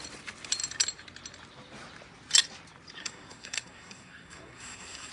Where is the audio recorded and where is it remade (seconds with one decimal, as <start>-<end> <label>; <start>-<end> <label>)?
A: 0.0-3.0 recorded; 3.0-5.1 remade